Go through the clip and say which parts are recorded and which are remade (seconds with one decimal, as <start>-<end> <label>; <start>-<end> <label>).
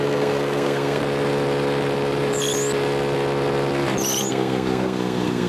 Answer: 0.0-1.0 remade; 1.0-4.3 recorded; 4.3-5.5 remade